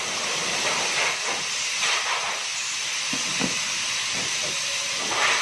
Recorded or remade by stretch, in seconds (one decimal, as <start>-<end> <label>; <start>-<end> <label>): 0.0-5.4 recorded